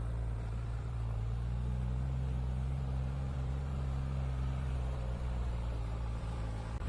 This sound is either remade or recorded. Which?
remade